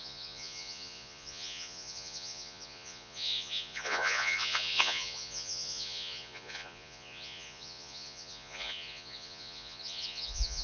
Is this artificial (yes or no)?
yes